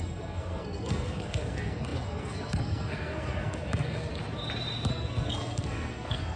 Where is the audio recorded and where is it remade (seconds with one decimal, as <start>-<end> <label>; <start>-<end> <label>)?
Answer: 0.0-4.1 remade; 4.1-4.9 recorded; 4.9-6.4 remade